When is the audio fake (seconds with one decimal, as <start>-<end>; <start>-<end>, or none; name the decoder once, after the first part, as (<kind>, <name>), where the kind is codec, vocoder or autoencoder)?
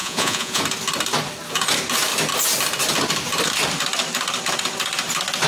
0.0-0.6 (vocoder, Vocos)